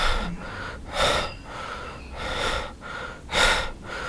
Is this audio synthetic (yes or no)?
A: no